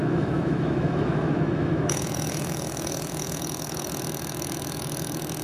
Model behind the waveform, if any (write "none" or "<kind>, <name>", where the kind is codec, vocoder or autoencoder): autoencoder, DAC-VAE